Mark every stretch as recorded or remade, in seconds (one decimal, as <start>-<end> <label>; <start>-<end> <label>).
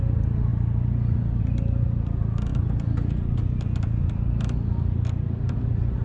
0.0-6.0 recorded